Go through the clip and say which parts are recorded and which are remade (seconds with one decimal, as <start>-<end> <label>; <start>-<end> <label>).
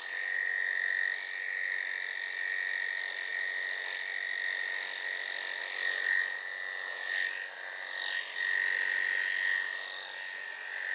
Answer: 0.0-10.9 recorded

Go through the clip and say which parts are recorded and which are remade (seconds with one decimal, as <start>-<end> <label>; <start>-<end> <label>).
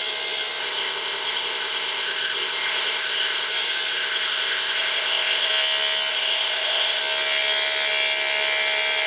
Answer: 0.0-0.6 recorded; 0.6-3.5 remade; 3.5-3.9 recorded; 3.9-5.5 remade; 5.5-6.1 recorded; 6.1-7.0 remade; 7.0-9.1 recorded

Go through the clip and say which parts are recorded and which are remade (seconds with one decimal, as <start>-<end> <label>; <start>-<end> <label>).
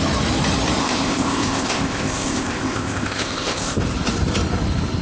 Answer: 0.0-0.8 recorded; 0.8-3.8 remade; 3.8-5.0 recorded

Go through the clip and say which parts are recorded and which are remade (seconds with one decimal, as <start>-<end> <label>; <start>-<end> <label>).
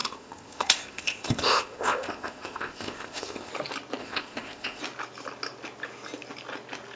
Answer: 0.0-3.5 remade; 3.5-4.0 recorded; 4.0-4.8 remade; 4.8-7.0 recorded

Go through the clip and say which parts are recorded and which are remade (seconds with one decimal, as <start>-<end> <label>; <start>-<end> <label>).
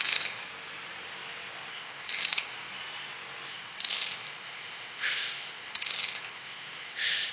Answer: 0.0-0.4 remade; 0.4-1.7 recorded; 1.7-2.7 remade; 2.7-3.5 recorded; 3.5-7.3 remade